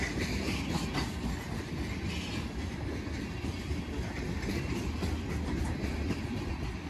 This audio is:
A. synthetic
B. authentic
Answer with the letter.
B